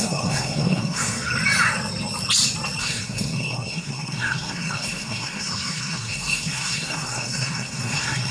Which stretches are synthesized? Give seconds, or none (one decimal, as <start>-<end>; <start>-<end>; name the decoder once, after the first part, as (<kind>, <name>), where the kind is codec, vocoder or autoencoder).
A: 0.0-1.3 (codec, SNAC); 2.8-8.3